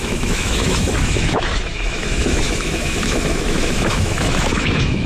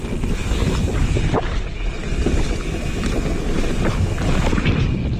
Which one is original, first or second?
second